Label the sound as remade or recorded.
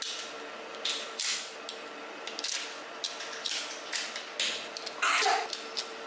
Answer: recorded